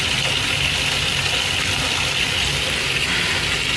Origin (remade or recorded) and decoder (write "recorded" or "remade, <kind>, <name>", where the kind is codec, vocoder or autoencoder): recorded